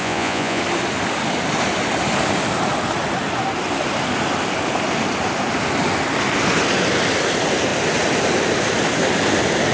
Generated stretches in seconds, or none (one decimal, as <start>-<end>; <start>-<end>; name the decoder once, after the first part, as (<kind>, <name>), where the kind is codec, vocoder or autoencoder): 0.0-0.6 (vocoder, Vocos)